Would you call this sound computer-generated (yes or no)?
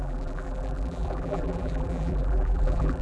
yes